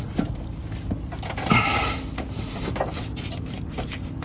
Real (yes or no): yes